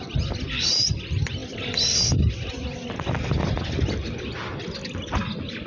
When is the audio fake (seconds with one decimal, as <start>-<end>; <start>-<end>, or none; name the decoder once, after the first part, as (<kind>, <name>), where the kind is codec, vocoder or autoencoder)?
none